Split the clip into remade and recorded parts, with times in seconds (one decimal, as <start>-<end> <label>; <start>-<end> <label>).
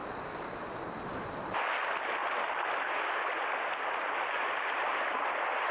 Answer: 0.0-5.7 recorded